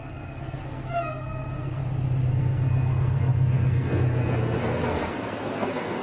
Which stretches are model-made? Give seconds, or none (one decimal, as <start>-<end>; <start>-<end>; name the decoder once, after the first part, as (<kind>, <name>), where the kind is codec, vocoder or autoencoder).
0.0-1.8 (codec, SNAC); 2.3-6.0